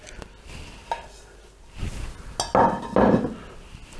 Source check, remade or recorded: recorded